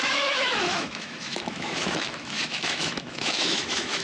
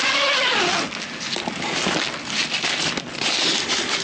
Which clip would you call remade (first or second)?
first